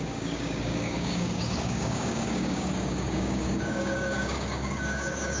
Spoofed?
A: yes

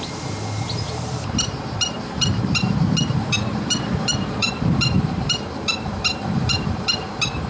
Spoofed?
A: yes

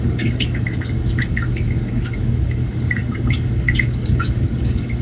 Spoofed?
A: yes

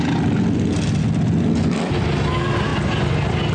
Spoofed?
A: no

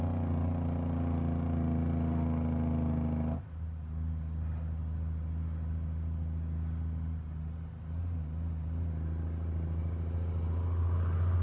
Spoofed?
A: no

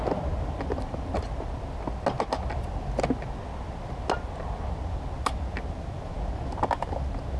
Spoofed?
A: no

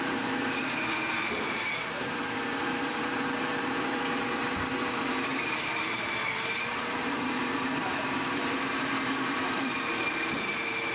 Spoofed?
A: yes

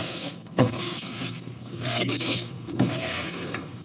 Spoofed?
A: yes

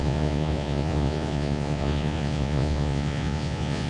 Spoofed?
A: yes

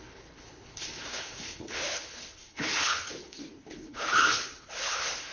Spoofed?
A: yes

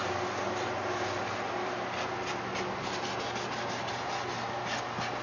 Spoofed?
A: no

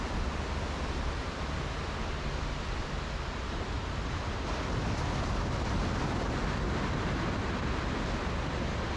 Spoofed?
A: no